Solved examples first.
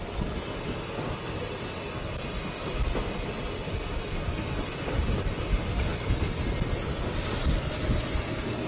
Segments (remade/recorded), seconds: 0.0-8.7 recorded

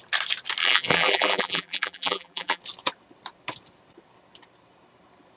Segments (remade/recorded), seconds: 0.0-0.6 recorded; 0.6-2.6 remade; 2.6-5.4 recorded

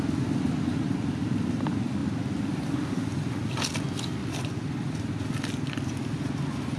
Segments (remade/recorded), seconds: 0.0-2.0 recorded; 2.0-2.7 remade; 2.7-4.2 recorded; 4.2-5.1 remade; 5.1-6.8 recorded

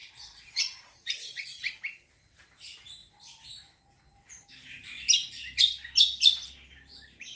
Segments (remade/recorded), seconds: 0.0-1.7 remade; 1.7-7.4 recorded

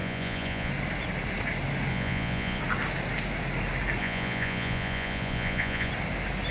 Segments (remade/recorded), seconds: 0.0-0.7 remade; 0.7-1.9 recorded; 1.9-2.6 remade; 2.6-4.0 recorded; 4.0-5.9 remade; 5.9-6.5 recorded